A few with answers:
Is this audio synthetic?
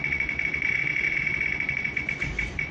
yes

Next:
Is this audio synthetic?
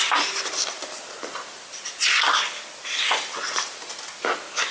no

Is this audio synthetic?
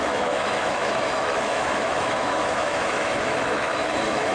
yes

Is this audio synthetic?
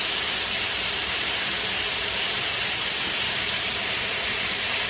yes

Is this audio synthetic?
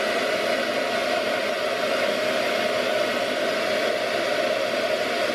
no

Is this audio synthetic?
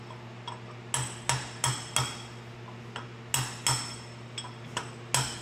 no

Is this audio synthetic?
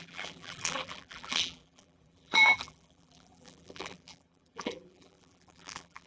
yes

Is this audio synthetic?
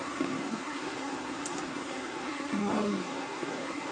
yes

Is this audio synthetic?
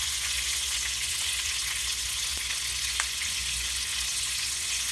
yes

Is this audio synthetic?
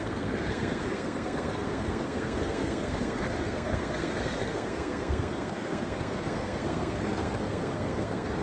yes